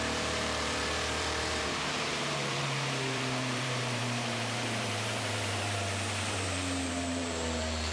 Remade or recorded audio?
remade